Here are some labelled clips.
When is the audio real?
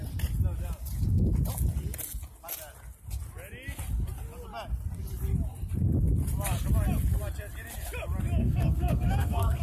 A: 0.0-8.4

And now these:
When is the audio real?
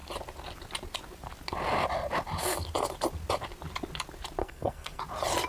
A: 0.0-4.4; 5.0-5.5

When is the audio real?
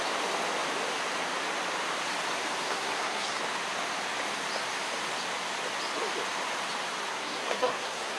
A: 0.0-2.6; 3.4-7.1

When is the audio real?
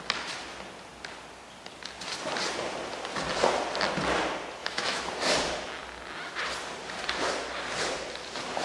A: 0.0-4.6; 5.1-8.6